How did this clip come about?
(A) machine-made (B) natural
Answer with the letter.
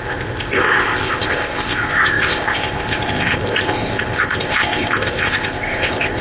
A